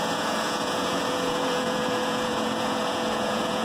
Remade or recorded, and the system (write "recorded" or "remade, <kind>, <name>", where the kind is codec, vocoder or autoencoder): remade, vocoder, Vocos